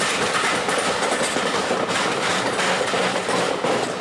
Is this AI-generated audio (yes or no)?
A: no